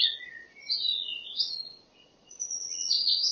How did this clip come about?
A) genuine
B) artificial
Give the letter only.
B